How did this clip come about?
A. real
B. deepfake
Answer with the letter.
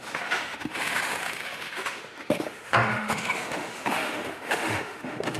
B